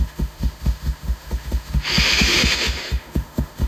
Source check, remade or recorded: remade